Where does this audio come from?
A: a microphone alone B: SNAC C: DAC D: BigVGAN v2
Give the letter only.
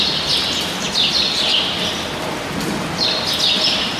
A